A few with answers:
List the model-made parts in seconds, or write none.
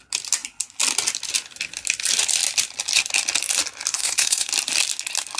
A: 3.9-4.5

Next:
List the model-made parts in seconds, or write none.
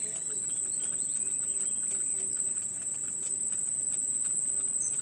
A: none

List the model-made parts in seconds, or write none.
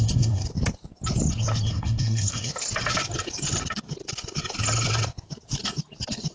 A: 0.0-0.4; 1.7-2.5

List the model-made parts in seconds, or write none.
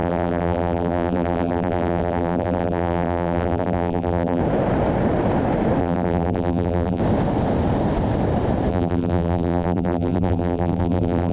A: 0.0-4.4; 5.8-7.0; 8.7-11.3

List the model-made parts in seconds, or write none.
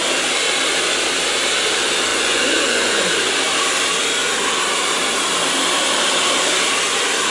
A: 2.1-3.1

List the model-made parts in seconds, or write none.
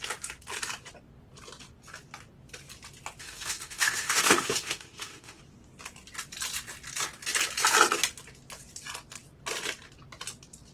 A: 3.2-5.4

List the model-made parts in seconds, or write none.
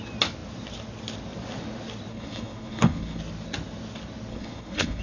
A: 2.1-3.2; 4.3-5.0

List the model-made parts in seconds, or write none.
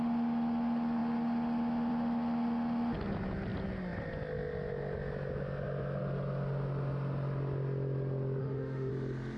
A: 8.4-8.9